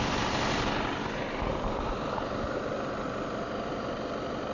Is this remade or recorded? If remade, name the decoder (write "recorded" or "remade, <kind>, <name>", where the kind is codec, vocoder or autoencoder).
recorded